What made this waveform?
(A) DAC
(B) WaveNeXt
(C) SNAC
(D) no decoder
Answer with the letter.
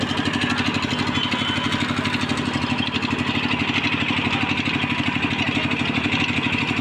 D